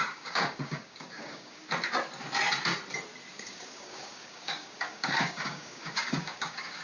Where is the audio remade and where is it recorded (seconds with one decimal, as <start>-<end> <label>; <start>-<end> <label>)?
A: 0.0-1.6 remade; 1.6-3.3 recorded; 3.3-6.8 remade